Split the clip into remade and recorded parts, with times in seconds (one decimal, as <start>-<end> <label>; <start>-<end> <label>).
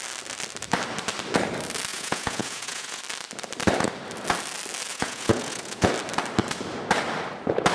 0.0-1.9 recorded; 1.9-3.0 remade; 3.0-4.9 recorded; 4.9-5.9 remade; 5.9-7.7 recorded